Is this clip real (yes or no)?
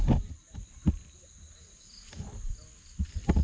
yes